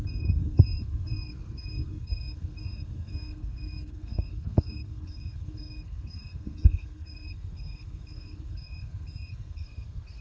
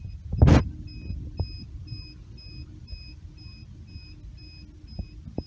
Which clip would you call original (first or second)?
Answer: second